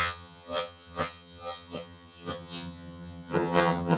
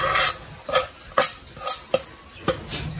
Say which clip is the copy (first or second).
first